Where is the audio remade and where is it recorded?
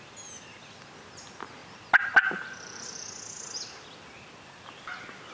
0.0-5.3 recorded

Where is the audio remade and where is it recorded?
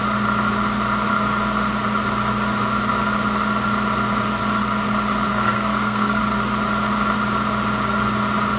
0.0-5.3 recorded; 5.3-6.2 remade; 6.2-8.6 recorded